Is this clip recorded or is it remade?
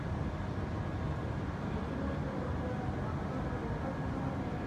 recorded